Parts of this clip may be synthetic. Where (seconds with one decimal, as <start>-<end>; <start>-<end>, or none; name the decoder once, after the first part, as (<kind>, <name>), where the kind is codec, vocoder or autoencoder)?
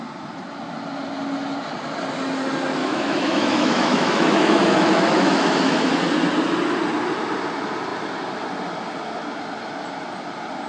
2.8-6.0 (autoencoder, DAC-VAE)